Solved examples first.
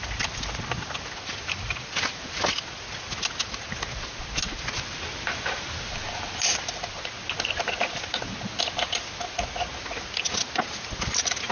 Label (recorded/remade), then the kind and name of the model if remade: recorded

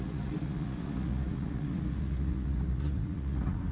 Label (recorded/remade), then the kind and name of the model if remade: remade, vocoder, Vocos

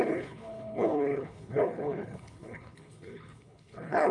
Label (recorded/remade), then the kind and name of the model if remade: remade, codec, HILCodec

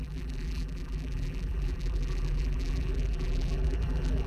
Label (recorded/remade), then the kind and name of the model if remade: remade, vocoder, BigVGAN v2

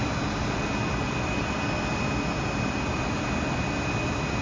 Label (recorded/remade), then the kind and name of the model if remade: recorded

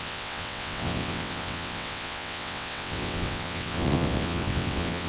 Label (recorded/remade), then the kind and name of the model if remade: remade, vocoder, WaveNeXt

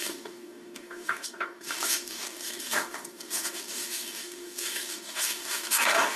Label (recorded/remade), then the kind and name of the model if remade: remade, codec, DAC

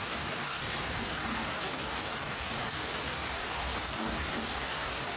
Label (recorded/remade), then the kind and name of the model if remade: remade, codec, DAC